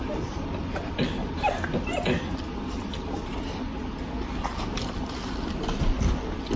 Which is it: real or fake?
real